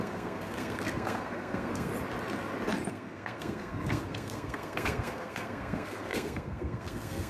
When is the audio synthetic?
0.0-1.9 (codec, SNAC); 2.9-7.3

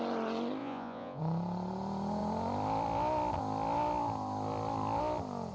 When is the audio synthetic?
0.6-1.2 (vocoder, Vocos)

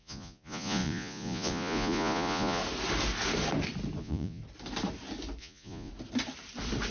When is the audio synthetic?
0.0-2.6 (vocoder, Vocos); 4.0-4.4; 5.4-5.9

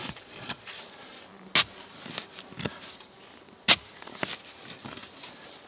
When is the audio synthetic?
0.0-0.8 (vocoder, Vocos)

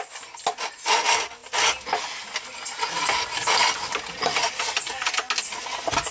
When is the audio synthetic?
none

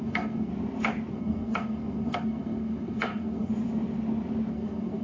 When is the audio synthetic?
0.0-0.5 (codec, SNAC); 1.1-3.5; 4.5-5.0